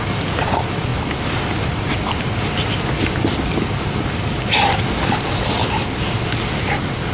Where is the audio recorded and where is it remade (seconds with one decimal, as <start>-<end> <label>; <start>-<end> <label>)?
0.0-7.1 recorded